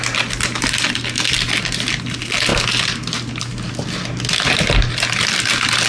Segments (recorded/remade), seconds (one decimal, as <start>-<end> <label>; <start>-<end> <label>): 0.0-5.9 recorded

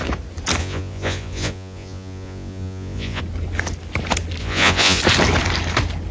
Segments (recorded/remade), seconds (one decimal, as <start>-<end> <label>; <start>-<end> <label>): 0.0-0.6 recorded; 0.6-3.2 remade; 3.2-4.4 recorded; 4.4-5.0 remade; 5.0-6.1 recorded

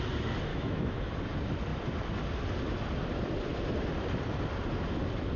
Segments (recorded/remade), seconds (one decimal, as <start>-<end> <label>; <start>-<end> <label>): 0.0-0.5 recorded; 0.5-1.0 remade; 1.0-5.4 recorded

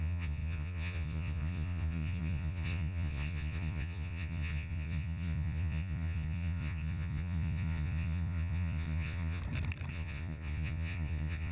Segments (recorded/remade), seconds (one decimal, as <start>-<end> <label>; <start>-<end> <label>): 0.0-9.4 remade; 9.4-9.9 recorded; 9.9-11.5 remade

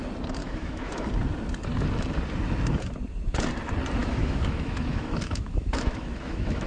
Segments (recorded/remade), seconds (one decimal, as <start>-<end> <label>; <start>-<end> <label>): 0.0-0.4 recorded; 0.4-1.1 remade; 1.1-4.0 recorded; 4.0-6.7 remade

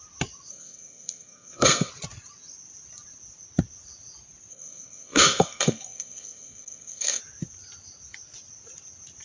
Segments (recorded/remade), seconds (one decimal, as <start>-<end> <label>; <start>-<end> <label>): 0.0-0.5 recorded; 0.5-1.9 remade; 1.9-4.5 recorded; 4.5-7.2 remade; 7.2-9.2 recorded